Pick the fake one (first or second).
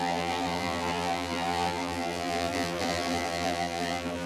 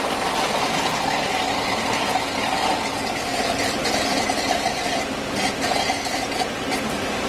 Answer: first